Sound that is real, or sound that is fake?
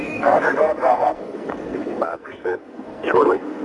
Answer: fake